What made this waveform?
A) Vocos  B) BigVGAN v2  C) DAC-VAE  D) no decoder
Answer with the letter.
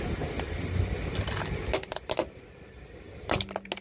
D